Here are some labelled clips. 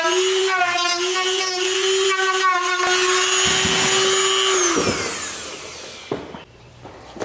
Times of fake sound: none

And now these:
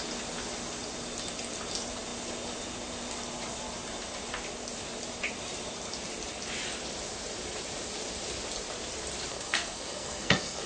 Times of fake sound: 9.3-10.7 (codec, SNAC)

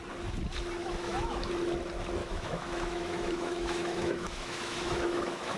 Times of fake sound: 0.8-1.5 (autoencoder, DAC-VAE); 2.2-5.6

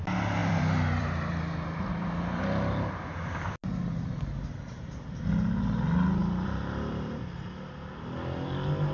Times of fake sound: 0.4-2.4 (vocoder, BigVGAN v2); 6.2-7.2